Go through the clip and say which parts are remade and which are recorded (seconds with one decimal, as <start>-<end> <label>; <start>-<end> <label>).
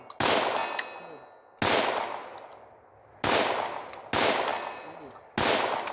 0.0-5.9 recorded